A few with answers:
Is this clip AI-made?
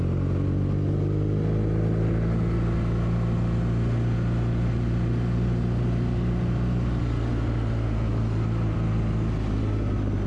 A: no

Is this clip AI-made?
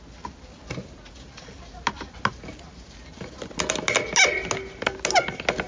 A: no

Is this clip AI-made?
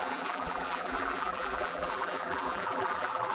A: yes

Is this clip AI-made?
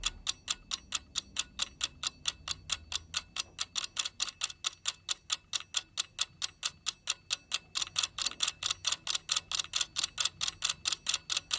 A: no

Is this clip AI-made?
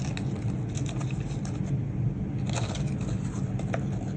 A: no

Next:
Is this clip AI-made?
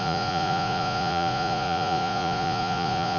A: yes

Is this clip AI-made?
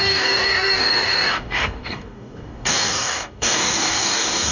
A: yes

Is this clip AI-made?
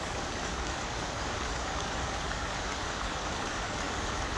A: yes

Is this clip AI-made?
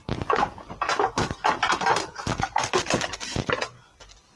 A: no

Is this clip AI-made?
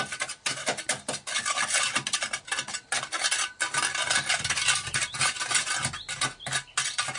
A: no